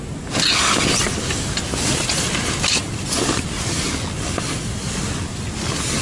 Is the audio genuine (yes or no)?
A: yes